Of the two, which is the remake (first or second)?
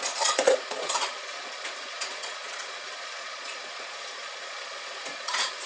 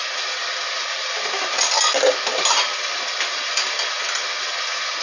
first